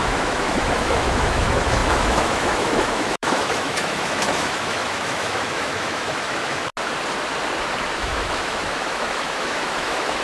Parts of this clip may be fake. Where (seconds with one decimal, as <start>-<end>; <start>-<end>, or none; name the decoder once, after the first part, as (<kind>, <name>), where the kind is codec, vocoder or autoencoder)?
0.0-6.7 (autoencoder, DAC-VAE); 8.0-10.2